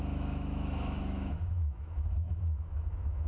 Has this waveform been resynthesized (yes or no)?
yes